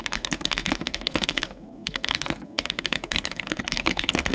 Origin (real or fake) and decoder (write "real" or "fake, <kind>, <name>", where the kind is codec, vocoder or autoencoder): fake, codec, SNAC